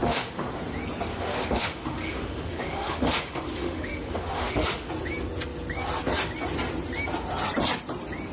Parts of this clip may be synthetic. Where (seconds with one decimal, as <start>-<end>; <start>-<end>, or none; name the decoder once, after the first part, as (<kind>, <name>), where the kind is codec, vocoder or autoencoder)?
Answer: 0.0-0.6 (autoencoder, DAC-VAE); 1.1-4.9

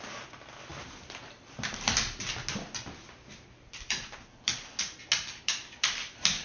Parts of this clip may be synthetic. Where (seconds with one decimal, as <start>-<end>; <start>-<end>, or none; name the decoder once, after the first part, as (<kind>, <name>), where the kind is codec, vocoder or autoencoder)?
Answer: 5.6-6.4 (vocoder, BigVGAN v2)

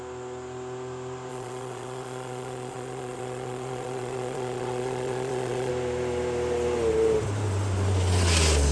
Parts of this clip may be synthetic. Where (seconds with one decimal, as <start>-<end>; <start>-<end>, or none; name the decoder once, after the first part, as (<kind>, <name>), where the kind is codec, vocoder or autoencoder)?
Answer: 1.3-5.7 (vocoder, Vocos)

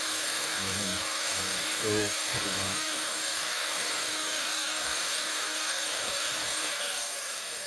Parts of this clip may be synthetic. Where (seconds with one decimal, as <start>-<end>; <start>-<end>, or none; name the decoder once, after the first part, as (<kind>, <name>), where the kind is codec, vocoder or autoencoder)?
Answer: 0.0-7.7 (codec, DAC)

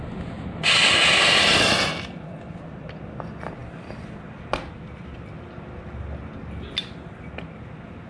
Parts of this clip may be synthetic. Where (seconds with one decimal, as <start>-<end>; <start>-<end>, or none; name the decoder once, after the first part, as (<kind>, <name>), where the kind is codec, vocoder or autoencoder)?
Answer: none

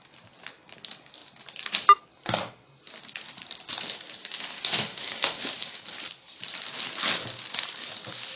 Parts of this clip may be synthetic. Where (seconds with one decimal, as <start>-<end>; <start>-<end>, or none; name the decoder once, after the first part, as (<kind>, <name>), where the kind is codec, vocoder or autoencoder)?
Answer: 4.2-5.8 (autoencoder, DAC-VAE)

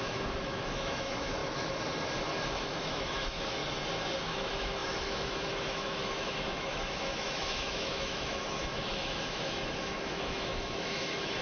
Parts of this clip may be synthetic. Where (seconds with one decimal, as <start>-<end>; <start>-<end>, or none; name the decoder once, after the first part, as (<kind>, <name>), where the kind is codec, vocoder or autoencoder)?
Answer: 0.0-1.4 (autoencoder, DAC-VAE); 2.5-3.6; 4.2-11.4

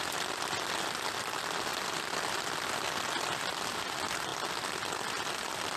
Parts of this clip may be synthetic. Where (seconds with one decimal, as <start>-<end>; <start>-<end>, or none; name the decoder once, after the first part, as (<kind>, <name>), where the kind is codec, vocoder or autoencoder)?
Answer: none